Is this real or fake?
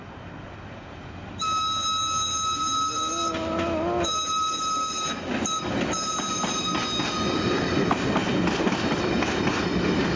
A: real